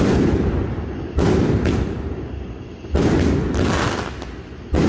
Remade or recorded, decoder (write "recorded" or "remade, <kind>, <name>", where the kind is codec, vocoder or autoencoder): recorded